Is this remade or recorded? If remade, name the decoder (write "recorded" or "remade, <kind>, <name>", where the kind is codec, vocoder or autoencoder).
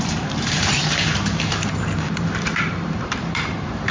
remade, vocoder, BigVGAN v2